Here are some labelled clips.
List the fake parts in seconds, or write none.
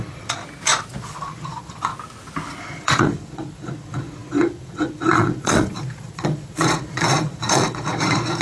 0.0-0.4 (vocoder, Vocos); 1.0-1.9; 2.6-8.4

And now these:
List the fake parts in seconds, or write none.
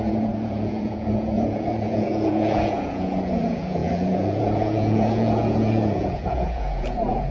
0.0-7.3 (vocoder, Vocos)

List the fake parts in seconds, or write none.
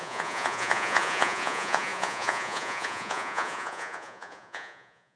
0.0-5.2 (vocoder, Vocos)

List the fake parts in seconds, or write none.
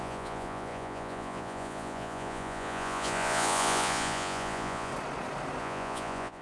0.0-4.9 (vocoder, Vocos); 5.6-6.4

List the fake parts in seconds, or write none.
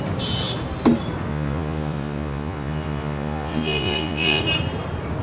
1.3-4.4 (vocoder, Vocos)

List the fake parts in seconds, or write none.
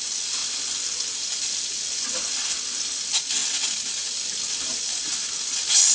none